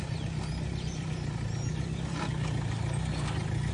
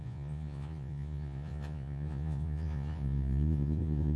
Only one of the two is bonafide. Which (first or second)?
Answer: first